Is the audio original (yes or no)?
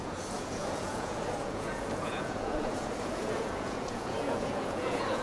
no